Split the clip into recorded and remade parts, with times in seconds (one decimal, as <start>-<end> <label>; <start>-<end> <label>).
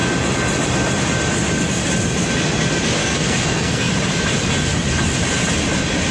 0.0-3.0 recorded; 3.0-3.9 remade; 3.9-6.1 recorded